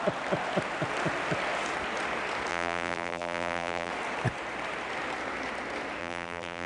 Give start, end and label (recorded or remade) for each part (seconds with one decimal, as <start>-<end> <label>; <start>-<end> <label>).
0.0-2.5 recorded; 2.5-3.9 remade; 3.9-6.0 recorded; 6.0-6.7 remade